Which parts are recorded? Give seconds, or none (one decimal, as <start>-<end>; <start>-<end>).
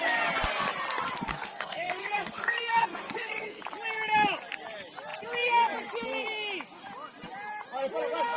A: 0.0-1.3; 3.6-8.4